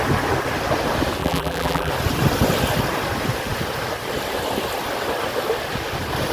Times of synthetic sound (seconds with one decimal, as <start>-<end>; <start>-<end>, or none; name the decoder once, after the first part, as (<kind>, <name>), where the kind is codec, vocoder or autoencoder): 1.2-1.9 (vocoder, BigVGAN v2)